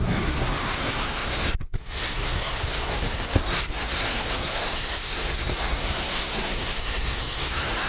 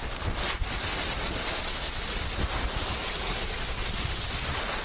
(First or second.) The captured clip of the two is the second